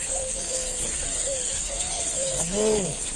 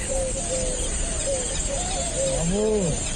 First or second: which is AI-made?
first